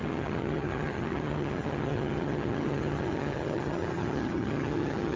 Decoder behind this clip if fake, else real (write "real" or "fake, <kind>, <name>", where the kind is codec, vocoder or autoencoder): fake, vocoder, HiFi-GAN